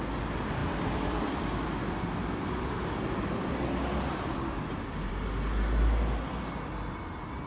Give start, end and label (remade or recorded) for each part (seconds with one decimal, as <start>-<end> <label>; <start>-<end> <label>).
0.0-7.5 recorded